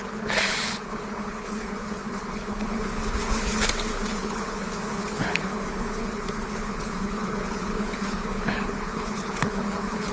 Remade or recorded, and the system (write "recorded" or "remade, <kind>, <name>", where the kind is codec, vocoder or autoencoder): remade, codec, HILCodec